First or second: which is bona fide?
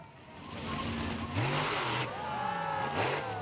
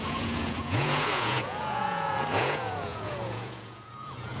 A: first